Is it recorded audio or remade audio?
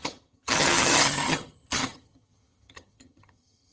remade